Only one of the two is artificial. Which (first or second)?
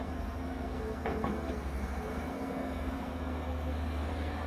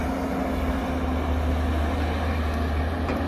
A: first